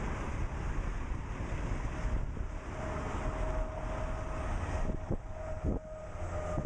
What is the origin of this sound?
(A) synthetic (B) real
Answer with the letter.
B